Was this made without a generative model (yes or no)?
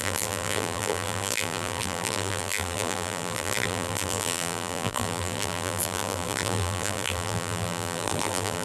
no